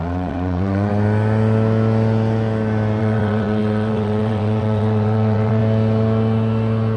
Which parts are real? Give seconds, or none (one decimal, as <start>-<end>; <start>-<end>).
0.9-3.0; 5.6-7.0